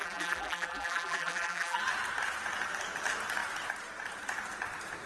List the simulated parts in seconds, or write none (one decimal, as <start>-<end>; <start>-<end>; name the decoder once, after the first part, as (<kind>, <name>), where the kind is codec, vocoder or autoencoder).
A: 0.0-1.8 (vocoder, BigVGAN v2)